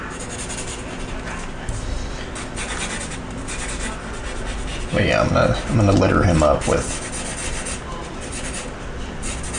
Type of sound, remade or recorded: recorded